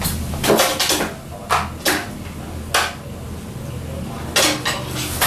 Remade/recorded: recorded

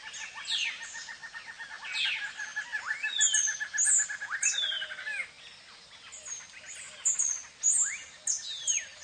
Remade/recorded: recorded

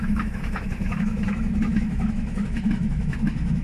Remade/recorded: remade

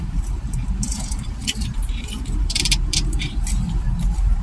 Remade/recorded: remade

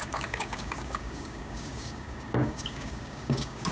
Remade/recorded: remade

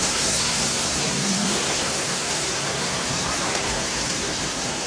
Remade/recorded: remade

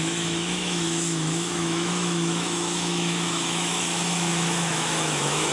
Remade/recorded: remade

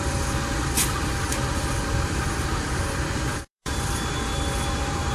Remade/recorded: remade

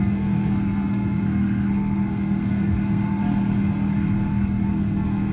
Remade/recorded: remade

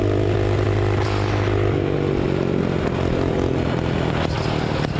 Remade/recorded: recorded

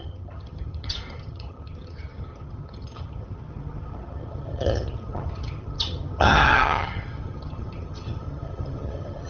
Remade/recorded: remade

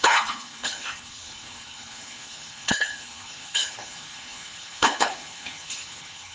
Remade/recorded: remade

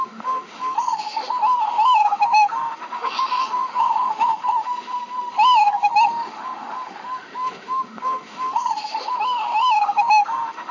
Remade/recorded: remade